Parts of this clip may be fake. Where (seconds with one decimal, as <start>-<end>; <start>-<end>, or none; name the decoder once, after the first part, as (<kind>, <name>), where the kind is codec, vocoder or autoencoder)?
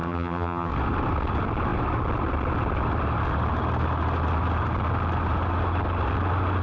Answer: 0.0-0.7 (vocoder, HiFi-GAN)